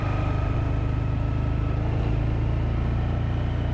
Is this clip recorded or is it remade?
recorded